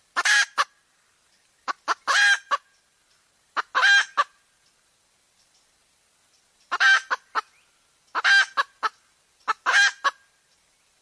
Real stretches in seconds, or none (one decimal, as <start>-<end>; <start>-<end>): 0.0-11.0

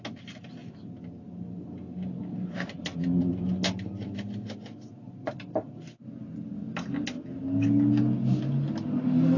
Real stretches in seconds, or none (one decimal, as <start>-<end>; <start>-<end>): 0.0-9.4

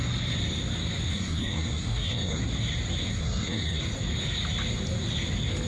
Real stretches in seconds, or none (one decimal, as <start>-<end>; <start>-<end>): 0.0-1.1; 2.4-3.1; 3.8-5.7

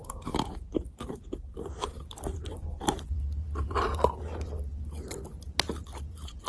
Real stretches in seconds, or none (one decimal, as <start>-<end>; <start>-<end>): 4.7-6.0

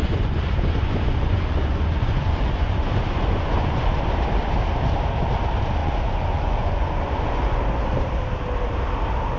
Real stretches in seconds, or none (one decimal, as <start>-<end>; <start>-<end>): 3.9-5.8; 7.6-9.4

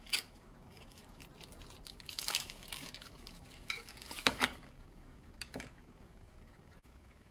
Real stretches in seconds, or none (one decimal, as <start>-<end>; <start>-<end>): 1.2-1.8

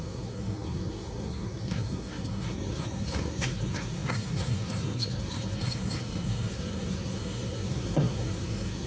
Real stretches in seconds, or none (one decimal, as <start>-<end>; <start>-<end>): none